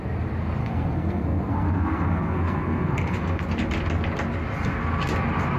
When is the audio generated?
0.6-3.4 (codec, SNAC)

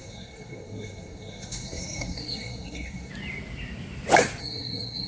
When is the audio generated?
0.0-3.1 (codec, SNAC); 4.4-5.1